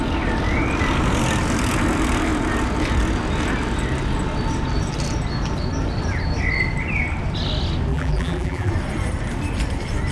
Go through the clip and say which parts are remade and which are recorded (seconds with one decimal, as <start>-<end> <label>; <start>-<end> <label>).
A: 0.0-7.9 recorded; 7.9-8.7 remade; 8.7-10.1 recorded